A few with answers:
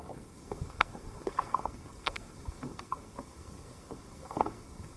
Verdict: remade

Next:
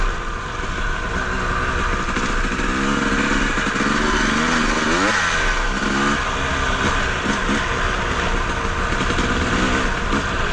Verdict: recorded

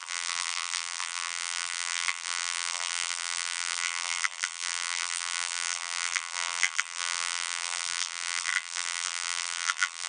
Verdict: remade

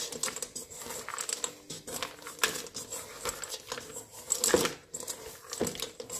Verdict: recorded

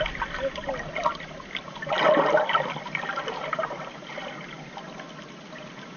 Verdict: remade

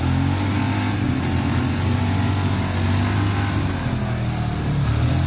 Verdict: recorded